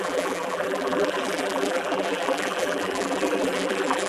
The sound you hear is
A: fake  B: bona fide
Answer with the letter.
A